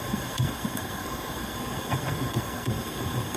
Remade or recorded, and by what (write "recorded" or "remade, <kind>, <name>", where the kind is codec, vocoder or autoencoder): remade, codec, SNAC